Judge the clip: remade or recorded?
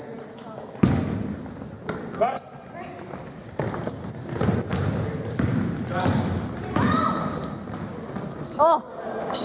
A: recorded